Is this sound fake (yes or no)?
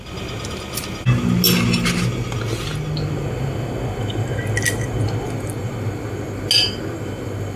no